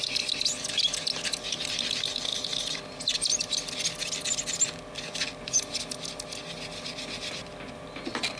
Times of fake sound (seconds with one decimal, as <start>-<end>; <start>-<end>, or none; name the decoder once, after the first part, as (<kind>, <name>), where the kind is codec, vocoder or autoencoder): none